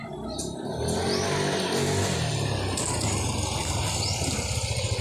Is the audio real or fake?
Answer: real